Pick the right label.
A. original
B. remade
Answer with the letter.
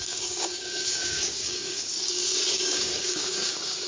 B